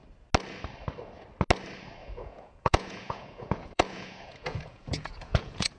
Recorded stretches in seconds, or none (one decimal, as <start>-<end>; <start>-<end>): 0.0-2.0